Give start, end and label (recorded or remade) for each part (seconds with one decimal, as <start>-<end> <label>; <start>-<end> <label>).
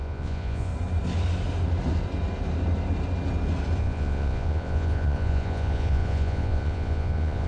0.0-0.7 remade; 0.7-3.8 recorded; 3.8-7.5 remade